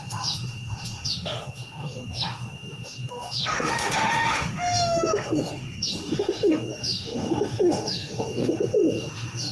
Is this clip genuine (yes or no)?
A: no